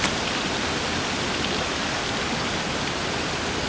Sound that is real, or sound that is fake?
real